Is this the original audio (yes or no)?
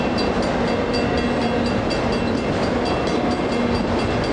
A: yes